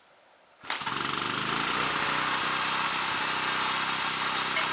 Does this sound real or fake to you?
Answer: real